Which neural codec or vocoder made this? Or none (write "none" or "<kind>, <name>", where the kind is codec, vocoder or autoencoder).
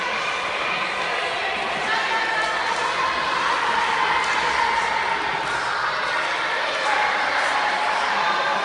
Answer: none